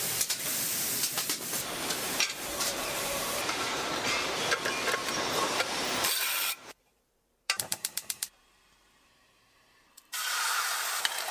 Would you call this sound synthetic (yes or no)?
yes